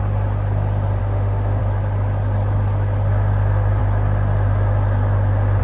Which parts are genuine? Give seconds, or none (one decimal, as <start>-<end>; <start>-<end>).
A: 0.0-1.0; 1.6-5.6